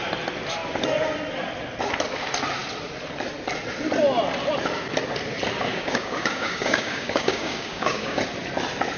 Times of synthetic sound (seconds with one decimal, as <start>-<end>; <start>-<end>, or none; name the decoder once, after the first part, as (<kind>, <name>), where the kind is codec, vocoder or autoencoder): 5.7-8.2 (codec, DAC)